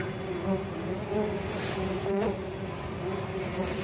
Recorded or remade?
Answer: recorded